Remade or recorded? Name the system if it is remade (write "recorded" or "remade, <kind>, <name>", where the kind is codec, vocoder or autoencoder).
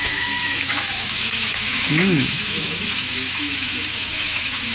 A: remade, autoencoder, DAC-VAE